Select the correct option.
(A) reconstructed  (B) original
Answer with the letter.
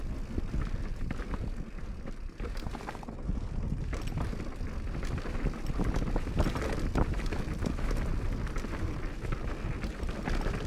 B